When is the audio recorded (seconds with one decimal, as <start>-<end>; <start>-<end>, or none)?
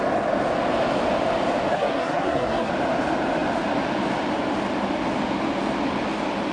0.0-1.7; 2.7-6.5